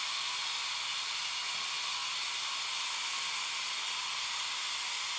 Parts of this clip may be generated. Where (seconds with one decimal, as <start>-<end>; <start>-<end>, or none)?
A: none